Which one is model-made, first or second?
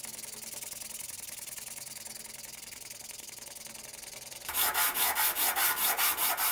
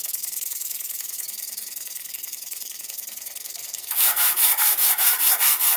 second